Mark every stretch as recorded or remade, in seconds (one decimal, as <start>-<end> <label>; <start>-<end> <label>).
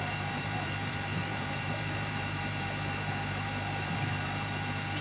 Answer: 0.0-5.0 remade